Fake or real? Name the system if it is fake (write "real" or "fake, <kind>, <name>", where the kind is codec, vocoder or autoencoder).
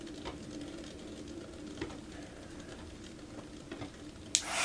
real